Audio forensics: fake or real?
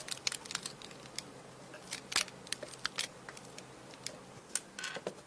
real